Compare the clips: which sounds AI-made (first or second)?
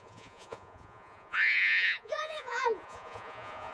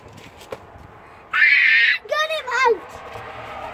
first